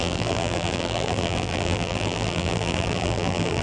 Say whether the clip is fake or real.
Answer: fake